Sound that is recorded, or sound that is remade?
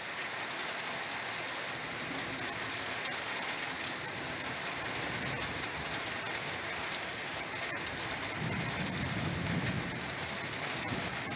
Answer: recorded